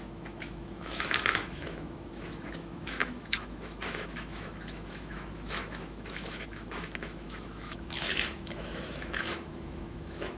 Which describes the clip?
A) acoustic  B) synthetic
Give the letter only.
B